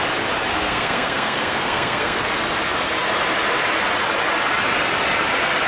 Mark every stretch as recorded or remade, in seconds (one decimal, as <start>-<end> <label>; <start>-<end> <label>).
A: 0.0-0.5 recorded; 0.5-2.2 remade; 2.2-5.7 recorded